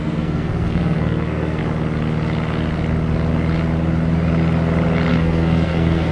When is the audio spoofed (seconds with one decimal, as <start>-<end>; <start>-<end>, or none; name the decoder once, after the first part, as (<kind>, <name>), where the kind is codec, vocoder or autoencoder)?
0.0-1.6 (codec, SNAC); 5.1-6.1